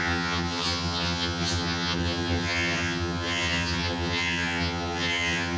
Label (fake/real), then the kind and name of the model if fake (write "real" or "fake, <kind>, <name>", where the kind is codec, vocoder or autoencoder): fake, vocoder, HiFi-GAN